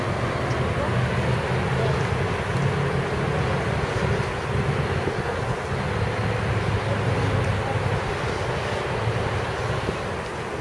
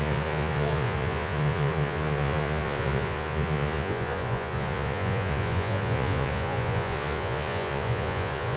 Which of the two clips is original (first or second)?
first